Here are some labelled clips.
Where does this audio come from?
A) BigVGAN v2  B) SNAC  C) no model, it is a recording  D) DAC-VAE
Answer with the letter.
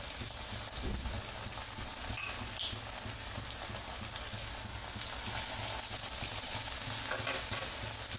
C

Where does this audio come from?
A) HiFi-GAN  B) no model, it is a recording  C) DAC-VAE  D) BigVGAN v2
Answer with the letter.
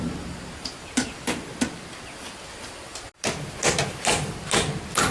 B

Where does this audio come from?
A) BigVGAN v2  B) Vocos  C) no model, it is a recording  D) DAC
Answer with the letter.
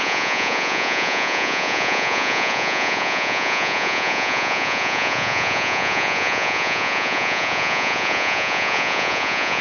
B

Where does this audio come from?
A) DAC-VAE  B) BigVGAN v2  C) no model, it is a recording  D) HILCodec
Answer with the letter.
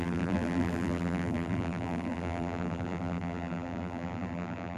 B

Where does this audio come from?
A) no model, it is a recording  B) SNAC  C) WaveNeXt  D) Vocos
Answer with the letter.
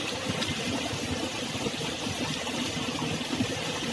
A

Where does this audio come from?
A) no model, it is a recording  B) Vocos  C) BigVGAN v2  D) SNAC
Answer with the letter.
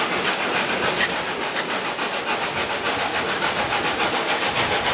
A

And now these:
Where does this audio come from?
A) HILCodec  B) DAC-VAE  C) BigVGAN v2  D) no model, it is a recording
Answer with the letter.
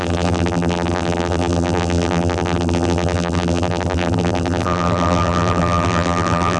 C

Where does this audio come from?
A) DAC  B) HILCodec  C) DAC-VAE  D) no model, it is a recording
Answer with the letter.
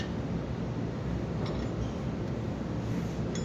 D